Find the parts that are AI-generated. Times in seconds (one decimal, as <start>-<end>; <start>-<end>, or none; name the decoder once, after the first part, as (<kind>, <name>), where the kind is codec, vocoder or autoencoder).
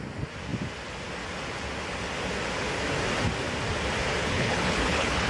4.2-5.3 (codec, HILCodec)